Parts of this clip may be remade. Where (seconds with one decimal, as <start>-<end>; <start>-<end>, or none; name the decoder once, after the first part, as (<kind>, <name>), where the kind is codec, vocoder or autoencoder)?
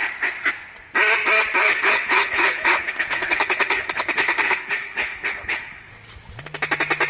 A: 1.6-5.9 (codec, HILCodec)